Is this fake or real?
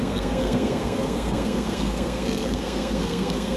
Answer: fake